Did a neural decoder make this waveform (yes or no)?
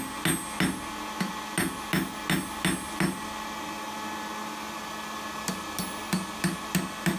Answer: no